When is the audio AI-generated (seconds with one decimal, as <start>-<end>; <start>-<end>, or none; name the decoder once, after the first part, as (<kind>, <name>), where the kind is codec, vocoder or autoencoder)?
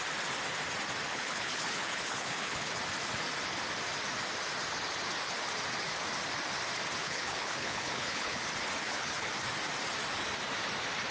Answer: 1.1-2.8 (codec, HILCodec); 7.0-8.4; 8.8-9.3